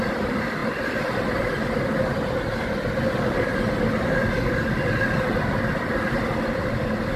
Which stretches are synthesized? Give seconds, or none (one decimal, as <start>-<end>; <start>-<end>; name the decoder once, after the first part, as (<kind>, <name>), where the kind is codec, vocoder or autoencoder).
0.0-0.6 (vocoder, BigVGAN v2); 3.1-4.2; 5.4-7.2